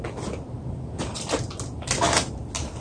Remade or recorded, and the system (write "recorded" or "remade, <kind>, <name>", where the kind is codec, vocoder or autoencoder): recorded